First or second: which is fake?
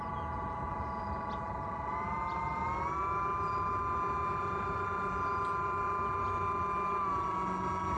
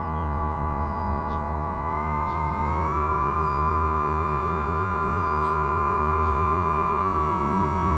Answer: second